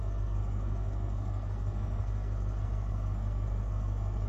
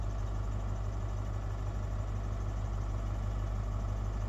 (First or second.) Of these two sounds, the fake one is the first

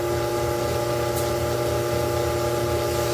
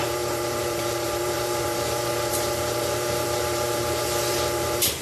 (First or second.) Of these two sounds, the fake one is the second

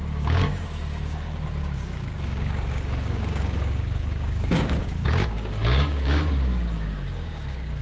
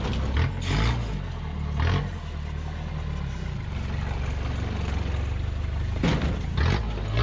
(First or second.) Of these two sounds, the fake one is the first